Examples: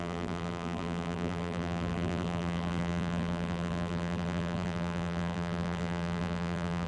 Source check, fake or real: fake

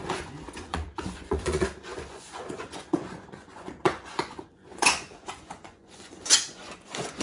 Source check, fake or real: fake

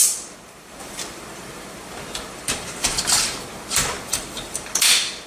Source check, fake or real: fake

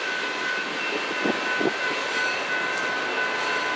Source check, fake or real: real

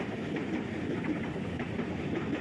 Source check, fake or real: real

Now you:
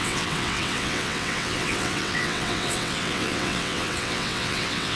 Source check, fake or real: fake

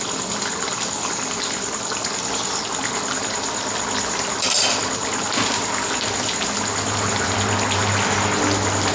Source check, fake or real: real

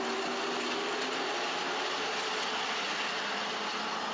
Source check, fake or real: real